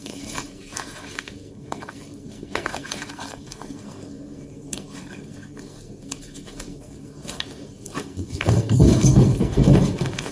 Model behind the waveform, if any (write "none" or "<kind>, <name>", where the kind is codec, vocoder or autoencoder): codec, SNAC